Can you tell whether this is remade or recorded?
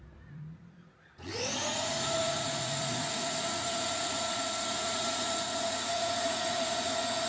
remade